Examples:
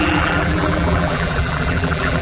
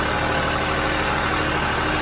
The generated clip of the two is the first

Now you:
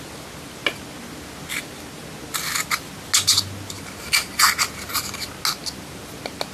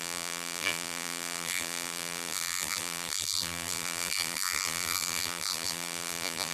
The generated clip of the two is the second